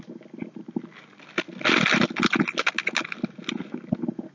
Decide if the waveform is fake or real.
real